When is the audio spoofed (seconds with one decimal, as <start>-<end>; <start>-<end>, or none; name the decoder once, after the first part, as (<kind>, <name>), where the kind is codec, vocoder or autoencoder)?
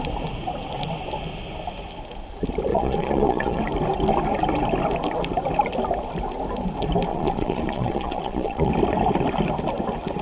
2.7-3.6 (vocoder, Vocos); 7.1-8.7